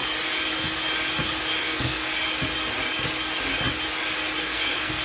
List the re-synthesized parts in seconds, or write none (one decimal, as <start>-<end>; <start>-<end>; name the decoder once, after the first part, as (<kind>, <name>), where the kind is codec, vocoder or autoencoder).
1.6-2.1 (codec, SNAC); 4.4-5.0